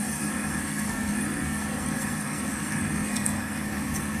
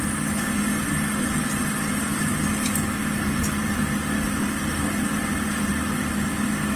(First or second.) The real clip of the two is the second